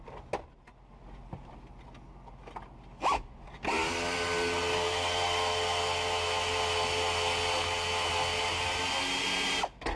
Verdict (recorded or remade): recorded